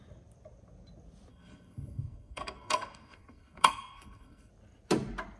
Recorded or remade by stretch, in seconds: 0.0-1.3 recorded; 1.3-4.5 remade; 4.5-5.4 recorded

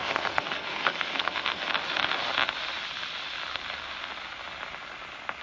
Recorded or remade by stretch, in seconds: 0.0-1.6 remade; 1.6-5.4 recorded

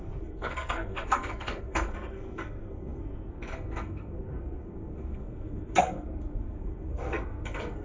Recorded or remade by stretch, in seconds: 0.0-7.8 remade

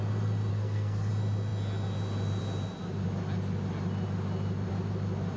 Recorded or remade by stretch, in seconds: 0.0-0.5 recorded; 0.5-1.1 remade; 1.1-5.4 recorded

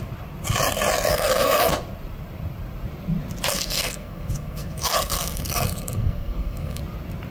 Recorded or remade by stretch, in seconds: 0.0-1.1 recorded; 1.1-1.7 remade; 1.7-3.5 recorded; 3.5-6.8 remade; 6.8-7.3 recorded